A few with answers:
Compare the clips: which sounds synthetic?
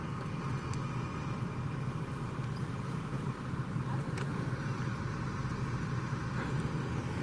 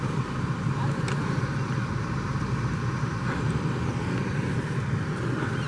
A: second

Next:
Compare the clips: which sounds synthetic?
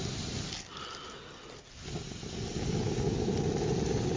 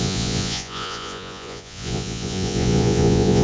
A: second